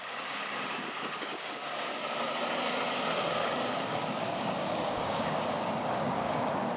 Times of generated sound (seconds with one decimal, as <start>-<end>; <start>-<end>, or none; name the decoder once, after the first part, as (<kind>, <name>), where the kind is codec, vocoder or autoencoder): 0.0-2.0 (codec, DAC); 3.3-6.8